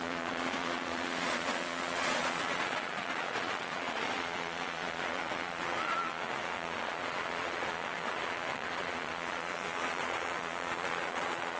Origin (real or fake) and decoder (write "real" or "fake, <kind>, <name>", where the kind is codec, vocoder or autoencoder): fake, vocoder, Vocos